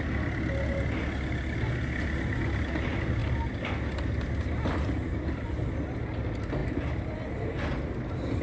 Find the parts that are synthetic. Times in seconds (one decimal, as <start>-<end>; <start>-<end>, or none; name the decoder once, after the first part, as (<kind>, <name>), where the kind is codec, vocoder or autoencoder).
none